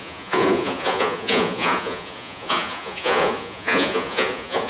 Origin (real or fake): fake